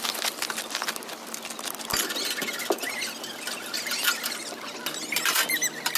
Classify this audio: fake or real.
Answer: real